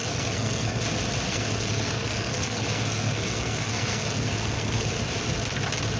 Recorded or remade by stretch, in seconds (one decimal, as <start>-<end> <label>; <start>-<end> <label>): 0.0-0.8 remade; 0.8-1.3 recorded; 1.3-4.9 remade; 4.9-6.0 recorded